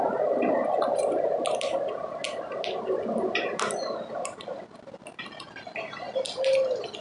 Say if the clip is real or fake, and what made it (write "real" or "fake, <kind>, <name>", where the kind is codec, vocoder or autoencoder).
real